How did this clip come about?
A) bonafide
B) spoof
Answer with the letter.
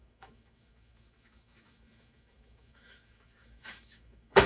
B